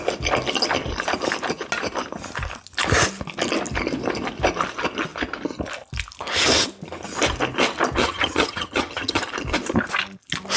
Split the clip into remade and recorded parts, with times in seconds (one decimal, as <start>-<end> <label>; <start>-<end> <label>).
0.0-8.0 recorded; 8.0-9.2 remade; 9.2-10.6 recorded